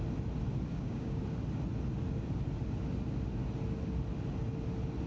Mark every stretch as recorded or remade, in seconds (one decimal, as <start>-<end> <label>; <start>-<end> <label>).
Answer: 0.0-0.7 recorded; 0.7-1.2 remade; 1.2-5.1 recorded